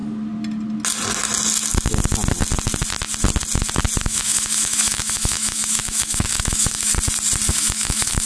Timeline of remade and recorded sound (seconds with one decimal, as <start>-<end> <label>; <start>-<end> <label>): 0.0-4.0 recorded; 4.0-6.9 remade; 6.9-7.5 recorded; 7.5-8.3 remade